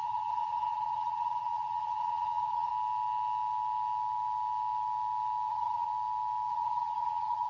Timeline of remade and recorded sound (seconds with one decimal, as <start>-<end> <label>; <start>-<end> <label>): 0.0-2.7 remade; 2.7-5.5 recorded; 5.5-5.9 remade; 5.9-6.5 recorded; 6.5-7.5 remade